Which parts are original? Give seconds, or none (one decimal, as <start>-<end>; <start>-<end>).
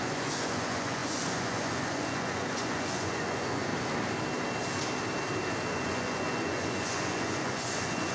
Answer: 3.7-5.7